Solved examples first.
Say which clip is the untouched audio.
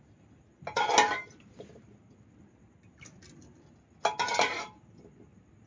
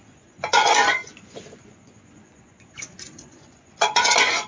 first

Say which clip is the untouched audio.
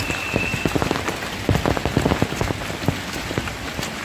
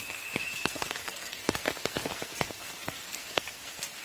first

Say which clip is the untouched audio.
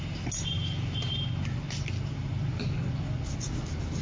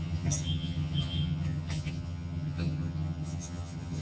first